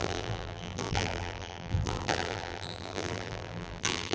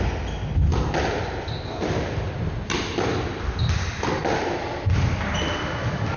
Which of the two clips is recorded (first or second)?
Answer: second